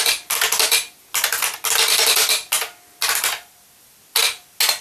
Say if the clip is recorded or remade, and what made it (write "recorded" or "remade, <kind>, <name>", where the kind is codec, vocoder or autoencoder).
recorded